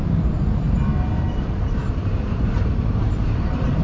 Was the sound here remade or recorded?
remade